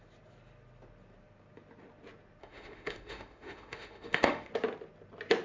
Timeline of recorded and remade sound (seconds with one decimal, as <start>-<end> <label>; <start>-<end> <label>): 0.0-2.4 recorded; 2.4-4.5 remade; 4.5-5.4 recorded